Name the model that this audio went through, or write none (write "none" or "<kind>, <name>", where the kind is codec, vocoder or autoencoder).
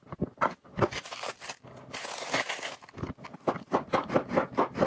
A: none